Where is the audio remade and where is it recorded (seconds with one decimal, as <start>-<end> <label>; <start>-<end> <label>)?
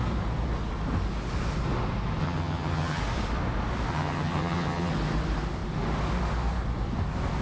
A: 0.0-2.2 recorded; 2.2-3.0 remade; 3.0-3.9 recorded; 3.9-4.9 remade; 4.9-7.4 recorded